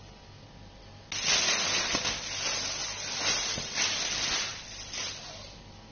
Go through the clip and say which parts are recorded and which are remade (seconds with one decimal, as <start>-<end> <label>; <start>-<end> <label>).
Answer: 0.0-5.9 recorded